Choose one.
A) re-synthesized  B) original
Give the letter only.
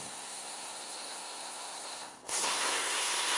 A